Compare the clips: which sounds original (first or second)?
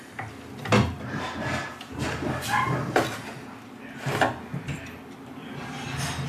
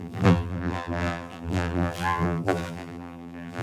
first